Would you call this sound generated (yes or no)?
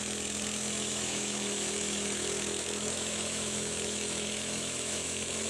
yes